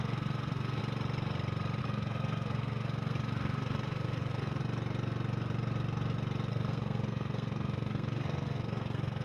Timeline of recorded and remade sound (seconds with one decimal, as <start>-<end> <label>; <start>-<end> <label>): 0.0-0.8 remade; 0.8-1.8 recorded; 1.8-4.6 remade; 4.6-6.5 recorded; 6.5-9.2 remade

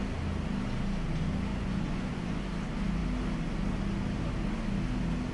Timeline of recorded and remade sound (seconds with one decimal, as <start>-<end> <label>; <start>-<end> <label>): 0.0-1.5 recorded; 1.5-2.4 remade; 2.4-5.3 recorded

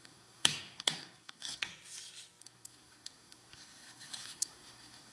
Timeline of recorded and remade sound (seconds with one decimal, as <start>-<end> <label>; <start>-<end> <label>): 0.0-1.7 remade; 1.7-2.4 recorded; 2.4-5.1 remade

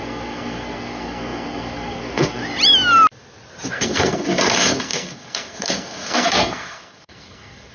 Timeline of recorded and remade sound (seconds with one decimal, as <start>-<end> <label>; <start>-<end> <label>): 0.0-2.4 remade; 2.4-3.7 recorded; 3.7-7.7 remade

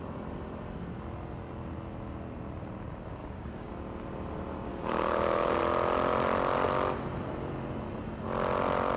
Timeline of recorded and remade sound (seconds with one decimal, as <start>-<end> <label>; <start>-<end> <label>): 0.0-3.2 recorded; 3.2-3.7 remade; 3.7-4.7 recorded; 4.7-5.6 remade; 5.6-9.0 recorded